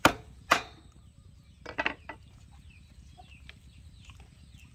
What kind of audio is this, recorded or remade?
recorded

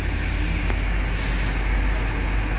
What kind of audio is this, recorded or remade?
recorded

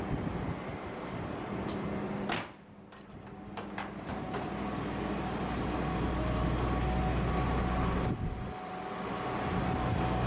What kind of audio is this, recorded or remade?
recorded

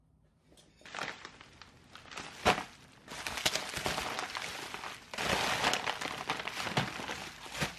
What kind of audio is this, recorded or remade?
recorded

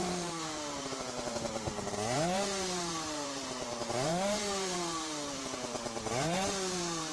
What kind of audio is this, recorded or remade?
remade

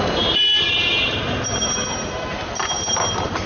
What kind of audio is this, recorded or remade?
remade